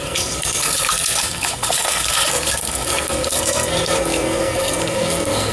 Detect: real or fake fake